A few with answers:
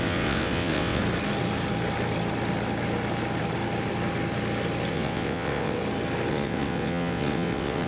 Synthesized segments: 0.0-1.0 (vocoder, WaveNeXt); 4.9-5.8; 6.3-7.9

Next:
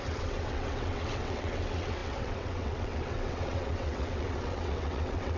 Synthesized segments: 0.0-5.4 (vocoder, WaveNeXt)

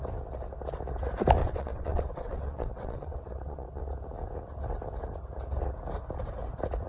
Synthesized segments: 1.4-3.8 (vocoder, WaveNeXt)

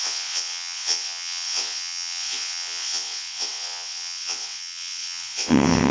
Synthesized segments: 0.0-5.9 (vocoder, WaveNeXt)

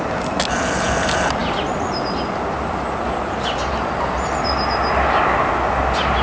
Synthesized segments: none

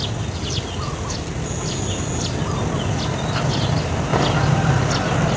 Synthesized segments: none

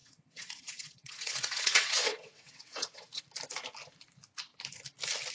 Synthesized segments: 0.0-3.2 (vocoder, WaveNeXt)